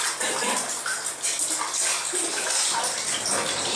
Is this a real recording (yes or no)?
yes